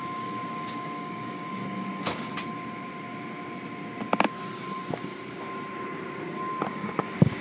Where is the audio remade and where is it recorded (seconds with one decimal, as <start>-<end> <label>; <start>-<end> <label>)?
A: 0.0-2.3 remade; 2.3-6.7 recorded; 6.7-7.4 remade